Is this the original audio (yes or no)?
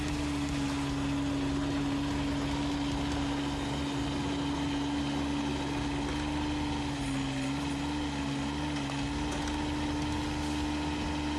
yes